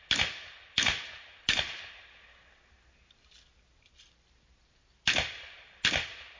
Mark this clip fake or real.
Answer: real